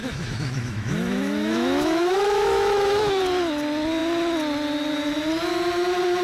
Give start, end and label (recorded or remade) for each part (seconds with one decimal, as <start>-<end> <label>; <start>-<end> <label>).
0.0-3.2 remade; 3.2-6.2 recorded